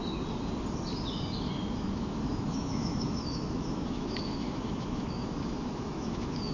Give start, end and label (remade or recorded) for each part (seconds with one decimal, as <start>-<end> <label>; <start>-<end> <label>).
0.0-1.7 recorded; 1.7-6.5 remade

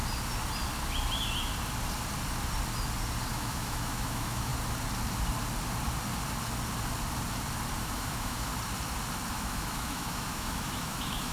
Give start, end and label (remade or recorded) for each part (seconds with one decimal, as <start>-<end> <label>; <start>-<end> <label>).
0.0-3.3 recorded; 3.3-4.5 remade; 4.5-7.8 recorded; 7.8-8.5 remade; 8.5-9.3 recorded; 9.3-11.3 remade

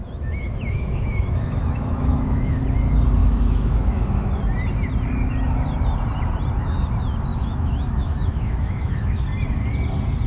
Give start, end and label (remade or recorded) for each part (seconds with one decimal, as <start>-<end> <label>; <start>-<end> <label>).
0.0-2.6 remade; 2.6-3.2 recorded; 3.2-4.3 remade; 4.3-7.3 recorded; 7.3-9.2 remade; 9.2-10.3 recorded

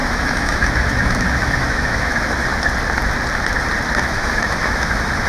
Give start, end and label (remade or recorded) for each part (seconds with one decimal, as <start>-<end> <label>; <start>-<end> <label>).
0.0-2.5 remade; 2.5-3.9 recorded; 3.9-5.3 remade

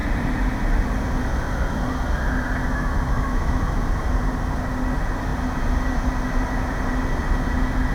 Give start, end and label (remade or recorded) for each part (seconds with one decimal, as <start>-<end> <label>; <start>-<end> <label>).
0.0-2.6 recorded; 2.6-3.8 remade; 3.8-7.9 recorded